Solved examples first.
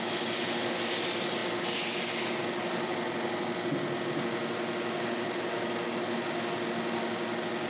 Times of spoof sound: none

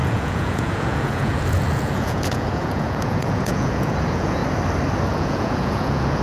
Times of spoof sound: 0.0-4.4; 5.1-6.2

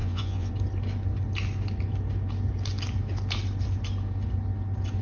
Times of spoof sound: 0.0-0.5

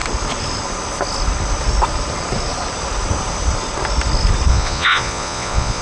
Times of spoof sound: 4.5-5.8

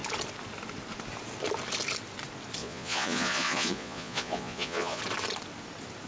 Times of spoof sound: 2.6-5.0

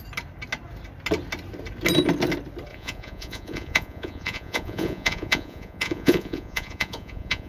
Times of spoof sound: 2.7-7.5